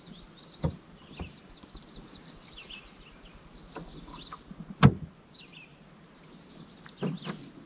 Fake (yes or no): no